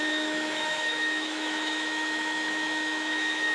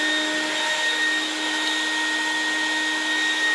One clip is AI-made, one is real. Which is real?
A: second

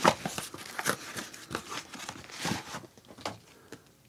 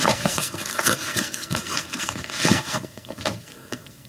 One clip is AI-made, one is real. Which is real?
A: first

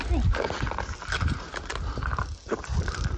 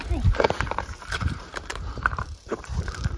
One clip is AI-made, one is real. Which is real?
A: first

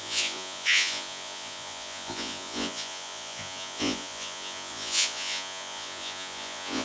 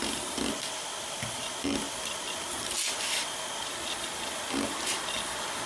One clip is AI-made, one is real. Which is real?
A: second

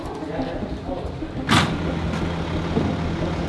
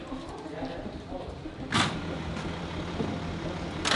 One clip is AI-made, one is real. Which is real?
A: first